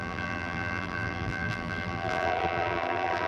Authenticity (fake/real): fake